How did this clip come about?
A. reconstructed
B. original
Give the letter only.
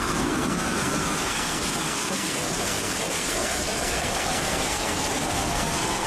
A